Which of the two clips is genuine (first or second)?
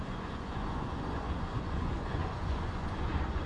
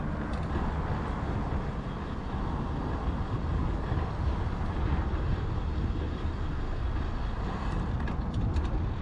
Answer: second